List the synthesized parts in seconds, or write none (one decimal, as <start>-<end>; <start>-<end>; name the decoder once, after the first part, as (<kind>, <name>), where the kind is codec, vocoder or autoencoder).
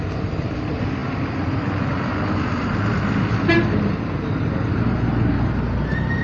none